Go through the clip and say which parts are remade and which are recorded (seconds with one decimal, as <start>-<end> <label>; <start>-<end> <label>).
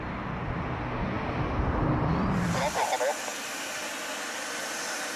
0.0-5.2 recorded